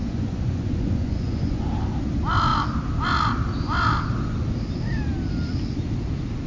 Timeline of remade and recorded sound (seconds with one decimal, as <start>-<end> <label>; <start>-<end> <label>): 0.0-1.6 remade; 1.6-6.5 recorded